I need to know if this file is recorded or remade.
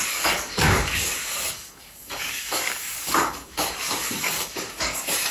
remade